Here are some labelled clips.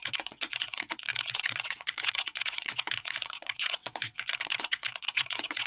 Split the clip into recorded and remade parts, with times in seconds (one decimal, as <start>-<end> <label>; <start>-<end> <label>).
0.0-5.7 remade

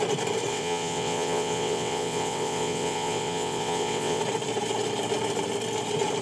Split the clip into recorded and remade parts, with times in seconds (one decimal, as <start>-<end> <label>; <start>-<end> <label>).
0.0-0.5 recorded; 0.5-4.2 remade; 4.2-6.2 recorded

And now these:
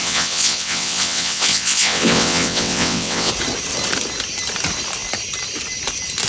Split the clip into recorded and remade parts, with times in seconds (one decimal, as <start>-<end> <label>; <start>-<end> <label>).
0.0-3.3 remade; 3.3-6.3 recorded

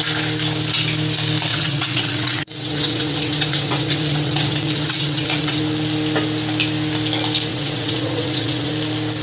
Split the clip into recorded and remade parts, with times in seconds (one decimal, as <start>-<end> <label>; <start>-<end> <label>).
0.0-1.5 recorded; 1.5-5.6 remade; 5.6-7.5 recorded; 7.5-8.7 remade; 8.7-9.2 recorded